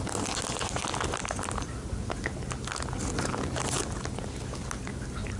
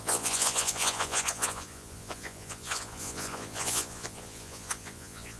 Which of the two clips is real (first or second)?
first